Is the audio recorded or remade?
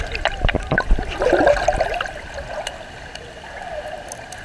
remade